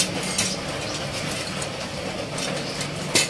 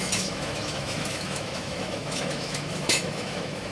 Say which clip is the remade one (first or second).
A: second